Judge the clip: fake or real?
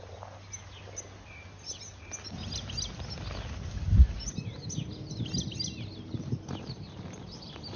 real